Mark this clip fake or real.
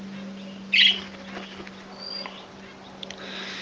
real